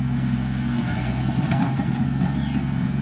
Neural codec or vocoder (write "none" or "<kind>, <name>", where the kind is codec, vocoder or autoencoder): codec, SNAC